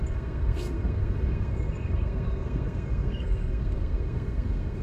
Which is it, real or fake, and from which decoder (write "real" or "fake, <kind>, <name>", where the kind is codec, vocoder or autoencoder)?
fake, codec, SNAC